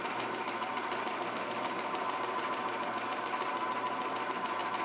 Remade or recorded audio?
recorded